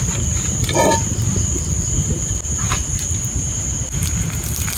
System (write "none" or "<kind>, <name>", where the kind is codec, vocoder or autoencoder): none